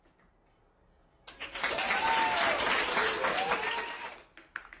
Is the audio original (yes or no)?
yes